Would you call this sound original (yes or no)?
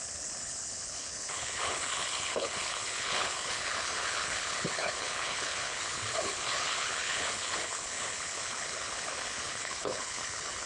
no